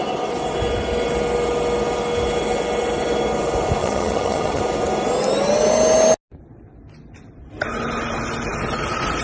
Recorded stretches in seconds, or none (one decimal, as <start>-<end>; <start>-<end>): 0.0-3.8; 4.6-9.2